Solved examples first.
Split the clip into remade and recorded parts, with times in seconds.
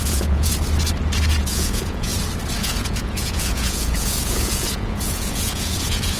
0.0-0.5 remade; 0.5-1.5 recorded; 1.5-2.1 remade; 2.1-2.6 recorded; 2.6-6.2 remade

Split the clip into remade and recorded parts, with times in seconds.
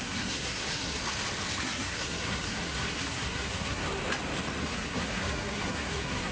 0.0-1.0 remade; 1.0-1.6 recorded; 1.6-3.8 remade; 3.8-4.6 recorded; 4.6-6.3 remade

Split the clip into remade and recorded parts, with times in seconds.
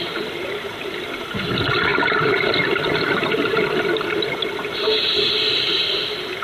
0.0-6.4 remade